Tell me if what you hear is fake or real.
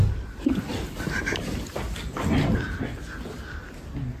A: real